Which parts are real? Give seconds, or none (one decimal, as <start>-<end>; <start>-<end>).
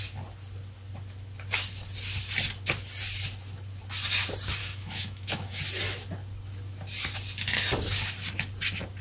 0.0-4.6; 5.6-9.0